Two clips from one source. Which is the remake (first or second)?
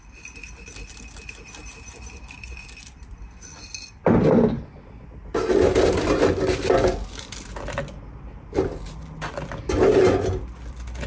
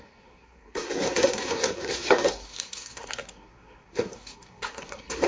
second